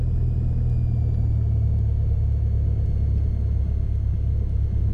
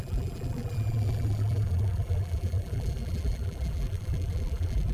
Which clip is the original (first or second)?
first